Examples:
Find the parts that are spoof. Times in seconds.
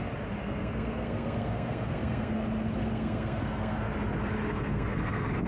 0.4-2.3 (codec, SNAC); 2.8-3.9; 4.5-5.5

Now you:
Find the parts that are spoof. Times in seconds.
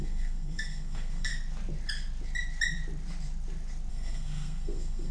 0.0-1.3 (codec, SNAC); 3.9-5.1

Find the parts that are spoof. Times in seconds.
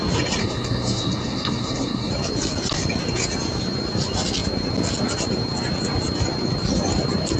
0.4-2.1 (codec, SNAC)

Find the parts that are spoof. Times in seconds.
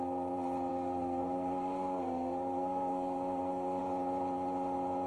0.7-3.8 (codec, SNAC)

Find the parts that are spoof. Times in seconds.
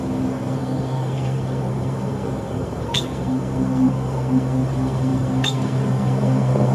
0.0-6.7 (codec, SNAC)